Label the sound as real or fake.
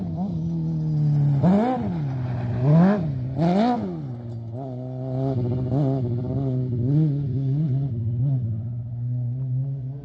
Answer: real